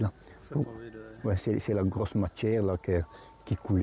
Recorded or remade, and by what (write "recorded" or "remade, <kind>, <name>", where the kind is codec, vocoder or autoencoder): recorded